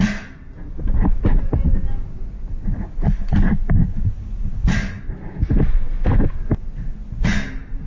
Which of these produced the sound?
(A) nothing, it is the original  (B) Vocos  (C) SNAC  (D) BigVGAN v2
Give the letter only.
A